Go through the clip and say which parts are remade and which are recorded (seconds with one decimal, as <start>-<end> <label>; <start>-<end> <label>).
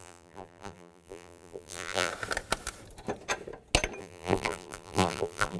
0.0-2.1 remade; 2.1-4.0 recorded; 4.0-5.6 remade